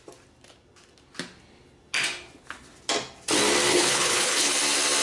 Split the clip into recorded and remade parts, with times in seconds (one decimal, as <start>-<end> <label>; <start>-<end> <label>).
0.0-3.7 recorded; 3.7-4.5 remade; 4.5-5.0 recorded

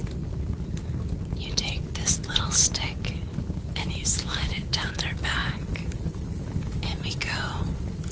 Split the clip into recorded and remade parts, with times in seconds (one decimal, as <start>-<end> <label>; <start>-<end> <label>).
0.0-3.3 recorded; 3.3-4.9 remade; 4.9-8.1 recorded

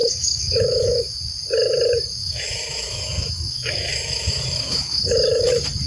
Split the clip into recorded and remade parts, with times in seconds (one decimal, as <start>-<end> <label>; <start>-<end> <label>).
0.0-1.1 remade; 1.1-2.2 recorded; 2.2-5.5 remade; 5.5-5.9 recorded

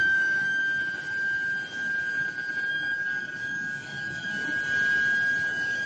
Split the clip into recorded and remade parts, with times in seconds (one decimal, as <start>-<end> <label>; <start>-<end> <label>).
0.0-0.6 remade; 0.6-2.7 recorded; 2.7-4.4 remade; 4.4-5.5 recorded; 5.5-5.9 remade

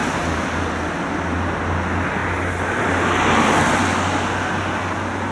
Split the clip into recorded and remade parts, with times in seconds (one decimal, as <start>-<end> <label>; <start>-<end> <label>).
0.0-5.3 recorded